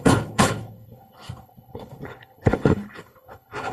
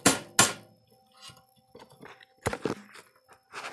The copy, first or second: first